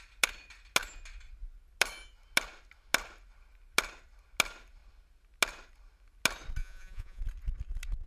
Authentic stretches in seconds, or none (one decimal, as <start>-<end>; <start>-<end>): 0.0-6.6; 7.2-8.1